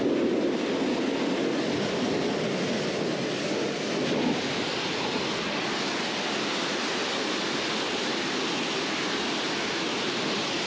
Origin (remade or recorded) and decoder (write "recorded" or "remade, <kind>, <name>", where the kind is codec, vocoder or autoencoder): recorded